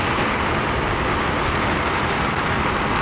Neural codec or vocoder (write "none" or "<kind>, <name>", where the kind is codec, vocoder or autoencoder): none